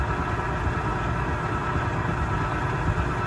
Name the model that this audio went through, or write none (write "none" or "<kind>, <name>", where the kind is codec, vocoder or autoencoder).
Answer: none